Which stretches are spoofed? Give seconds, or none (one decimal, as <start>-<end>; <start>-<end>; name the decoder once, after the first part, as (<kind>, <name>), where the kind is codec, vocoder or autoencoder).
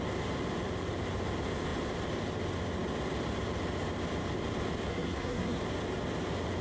4.9-5.6 (codec, SNAC)